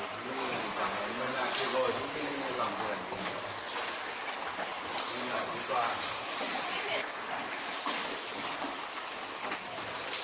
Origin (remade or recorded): recorded